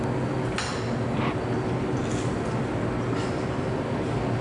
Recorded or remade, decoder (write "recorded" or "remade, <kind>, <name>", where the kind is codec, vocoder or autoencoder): recorded